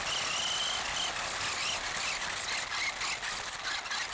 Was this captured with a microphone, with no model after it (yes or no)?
yes